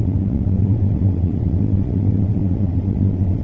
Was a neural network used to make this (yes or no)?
yes